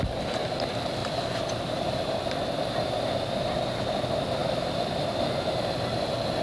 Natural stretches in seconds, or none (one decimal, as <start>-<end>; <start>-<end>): 0.0-1.0; 2.0-4.4; 5.2-6.4